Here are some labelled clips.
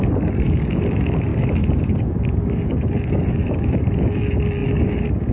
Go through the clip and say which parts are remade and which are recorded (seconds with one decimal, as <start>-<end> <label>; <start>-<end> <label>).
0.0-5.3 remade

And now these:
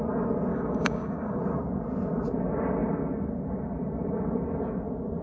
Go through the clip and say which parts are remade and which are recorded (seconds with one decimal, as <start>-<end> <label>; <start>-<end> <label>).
0.0-0.5 recorded; 0.5-1.4 remade; 1.4-5.2 recorded

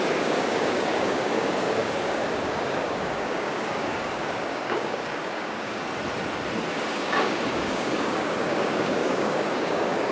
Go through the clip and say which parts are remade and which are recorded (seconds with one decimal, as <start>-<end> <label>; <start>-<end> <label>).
0.0-5.8 remade; 5.8-6.7 recorded; 6.7-10.1 remade